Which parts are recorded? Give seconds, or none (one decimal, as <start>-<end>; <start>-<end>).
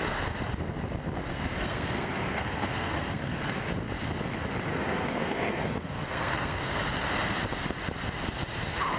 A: 0.0-1.3; 3.7-4.7; 6.9-9.0